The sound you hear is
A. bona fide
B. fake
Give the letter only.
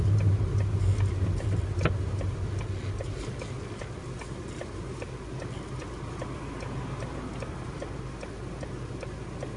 A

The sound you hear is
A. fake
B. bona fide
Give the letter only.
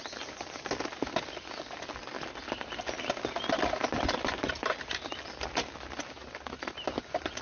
B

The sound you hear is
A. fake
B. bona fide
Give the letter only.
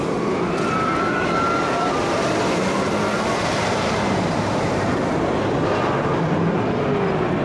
B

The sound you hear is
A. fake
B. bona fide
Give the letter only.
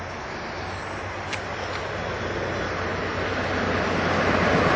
B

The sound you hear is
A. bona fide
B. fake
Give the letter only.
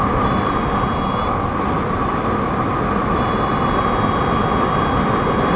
A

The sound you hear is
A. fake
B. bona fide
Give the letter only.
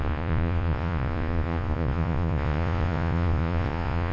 A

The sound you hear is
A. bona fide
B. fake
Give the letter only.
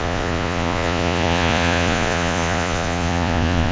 B